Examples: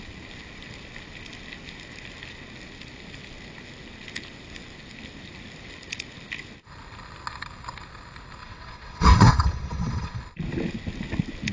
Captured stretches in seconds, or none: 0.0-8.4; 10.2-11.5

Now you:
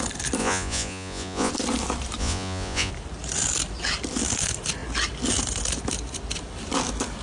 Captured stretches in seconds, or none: 0.0-0.4; 1.5-2.2; 2.9-7.2

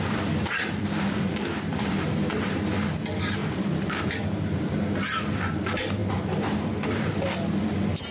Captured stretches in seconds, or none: 0.0-0.8; 2.7-8.1

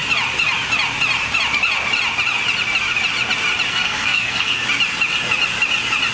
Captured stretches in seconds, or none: 0.0-3.7; 4.6-6.1

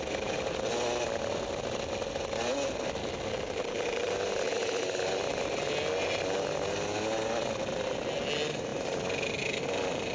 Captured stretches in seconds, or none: 0.0-10.1

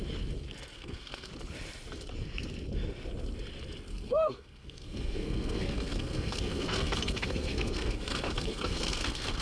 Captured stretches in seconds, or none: 0.0-0.7; 1.3-3.9

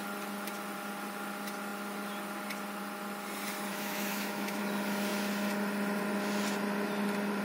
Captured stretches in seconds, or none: 0.0-3.7; 4.6-7.4